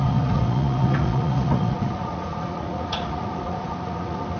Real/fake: fake